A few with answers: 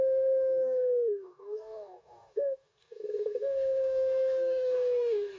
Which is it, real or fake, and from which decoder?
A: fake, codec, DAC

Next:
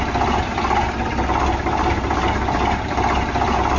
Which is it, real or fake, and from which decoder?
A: real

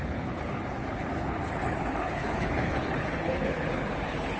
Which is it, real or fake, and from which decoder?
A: fake, codec, HILCodec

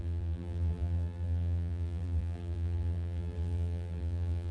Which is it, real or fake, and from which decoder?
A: fake, vocoder, BigVGAN v2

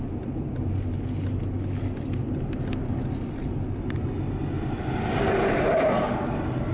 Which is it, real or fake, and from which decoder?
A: real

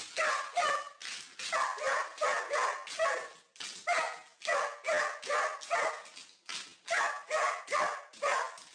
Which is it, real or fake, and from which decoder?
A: real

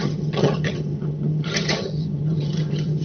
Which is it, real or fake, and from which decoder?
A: fake, vocoder, HiFi-GAN